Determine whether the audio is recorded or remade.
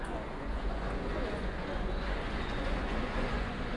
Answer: remade